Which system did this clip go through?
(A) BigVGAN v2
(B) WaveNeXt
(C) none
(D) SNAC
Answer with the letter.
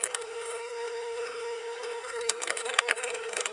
D